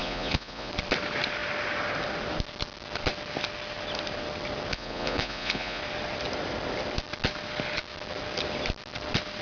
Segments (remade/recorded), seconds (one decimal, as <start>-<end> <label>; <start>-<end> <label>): 0.0-0.7 remade; 0.7-4.7 recorded; 4.7-5.8 remade; 5.8-9.4 recorded